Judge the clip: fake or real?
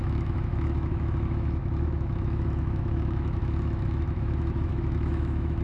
fake